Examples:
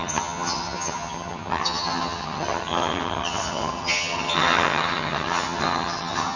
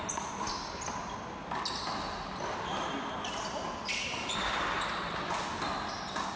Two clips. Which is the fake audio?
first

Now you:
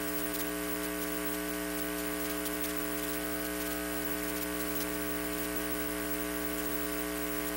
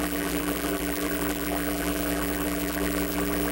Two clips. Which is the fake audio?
second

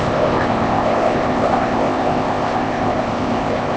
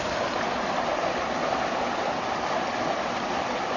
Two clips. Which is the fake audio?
first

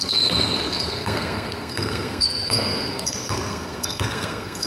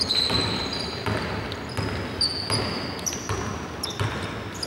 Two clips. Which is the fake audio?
first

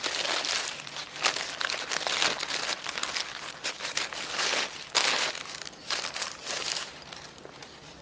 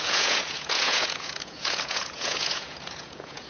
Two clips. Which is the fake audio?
second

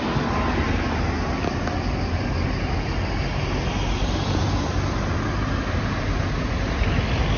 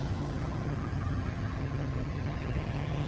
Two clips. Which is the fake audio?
second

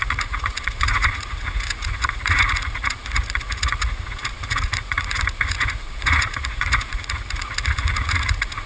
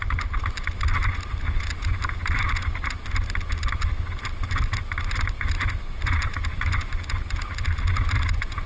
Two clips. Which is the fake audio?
first